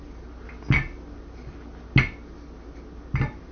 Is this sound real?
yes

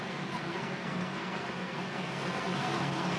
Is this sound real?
no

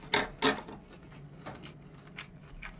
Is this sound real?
yes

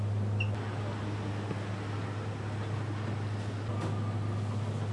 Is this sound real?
yes